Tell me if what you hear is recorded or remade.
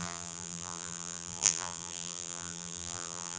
remade